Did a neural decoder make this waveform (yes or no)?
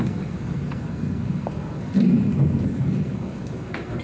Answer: yes